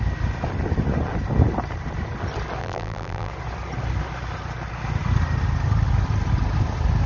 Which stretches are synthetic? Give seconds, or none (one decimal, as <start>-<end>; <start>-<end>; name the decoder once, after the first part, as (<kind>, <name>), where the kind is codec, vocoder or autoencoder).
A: 2.6-3.3 (vocoder, BigVGAN v2)

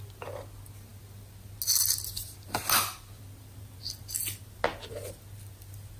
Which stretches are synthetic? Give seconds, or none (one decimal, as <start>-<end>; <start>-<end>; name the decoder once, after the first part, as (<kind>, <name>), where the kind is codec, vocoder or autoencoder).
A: none

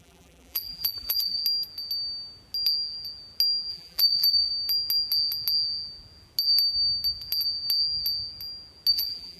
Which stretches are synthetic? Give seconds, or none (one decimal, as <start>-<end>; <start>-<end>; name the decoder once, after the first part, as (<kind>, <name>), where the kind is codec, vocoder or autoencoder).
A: 0.0-1.4 (vocoder, BigVGAN v2); 3.7-4.5; 8.9-9.4

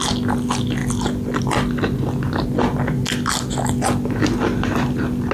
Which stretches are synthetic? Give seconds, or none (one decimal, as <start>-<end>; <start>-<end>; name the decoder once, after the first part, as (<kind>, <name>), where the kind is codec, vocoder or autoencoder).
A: none

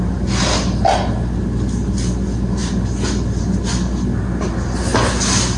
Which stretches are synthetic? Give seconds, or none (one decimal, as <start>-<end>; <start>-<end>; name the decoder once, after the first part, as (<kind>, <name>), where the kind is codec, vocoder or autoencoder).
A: none

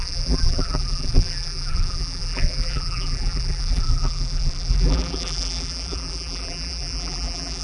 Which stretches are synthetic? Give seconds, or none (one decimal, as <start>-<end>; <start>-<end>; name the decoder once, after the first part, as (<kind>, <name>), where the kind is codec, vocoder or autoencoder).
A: 0.0-7.6 (vocoder, BigVGAN v2)